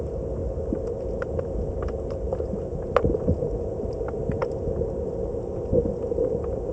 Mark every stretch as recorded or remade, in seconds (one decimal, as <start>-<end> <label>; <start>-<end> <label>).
0.0-6.7 recorded